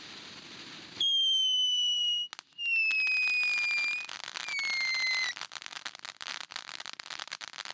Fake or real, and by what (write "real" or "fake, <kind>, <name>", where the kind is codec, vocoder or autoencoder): real